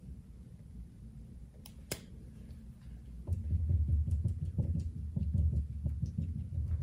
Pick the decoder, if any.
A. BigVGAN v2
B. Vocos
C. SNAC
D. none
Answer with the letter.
D